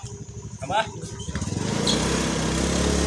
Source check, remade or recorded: recorded